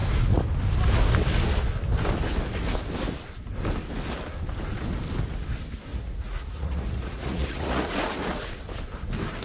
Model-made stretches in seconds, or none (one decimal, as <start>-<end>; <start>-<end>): 5.9-8.5